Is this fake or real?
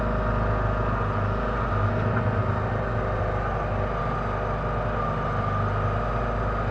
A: real